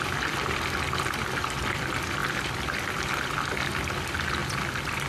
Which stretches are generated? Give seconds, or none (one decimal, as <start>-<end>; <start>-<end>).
none